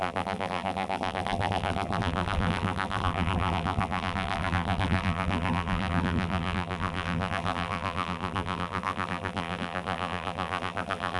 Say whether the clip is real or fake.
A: fake